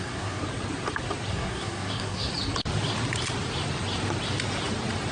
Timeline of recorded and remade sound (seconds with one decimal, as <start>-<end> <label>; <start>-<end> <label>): 0.0-0.4 remade; 0.4-1.3 recorded; 1.3-2.3 remade; 2.3-5.1 recorded